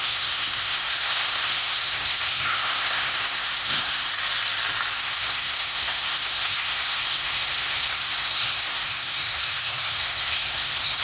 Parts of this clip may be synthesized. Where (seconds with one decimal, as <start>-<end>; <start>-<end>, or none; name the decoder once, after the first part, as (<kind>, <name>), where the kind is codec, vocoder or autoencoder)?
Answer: 0.0-4.1 (codec, SNAC); 5.0-11.0